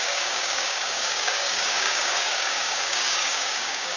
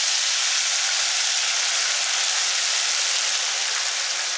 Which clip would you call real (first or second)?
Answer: second